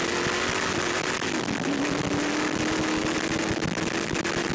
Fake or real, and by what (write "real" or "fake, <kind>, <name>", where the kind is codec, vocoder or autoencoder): real